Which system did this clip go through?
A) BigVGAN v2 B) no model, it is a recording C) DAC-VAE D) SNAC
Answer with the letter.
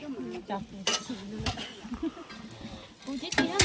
B